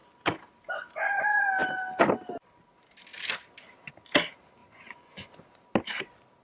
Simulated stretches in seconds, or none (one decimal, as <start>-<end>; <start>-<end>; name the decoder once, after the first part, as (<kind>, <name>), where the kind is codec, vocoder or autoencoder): 4.6-5.3 (vocoder, Vocos)